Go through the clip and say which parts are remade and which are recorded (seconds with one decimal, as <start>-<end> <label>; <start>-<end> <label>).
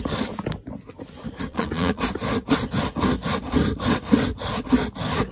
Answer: 0.0-1.5 recorded; 1.5-2.0 remade; 2.0-5.3 recorded